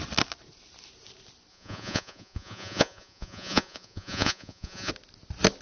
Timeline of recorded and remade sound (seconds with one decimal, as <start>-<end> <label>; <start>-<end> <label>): 0.0-1.5 recorded; 1.5-4.9 remade; 4.9-5.6 recorded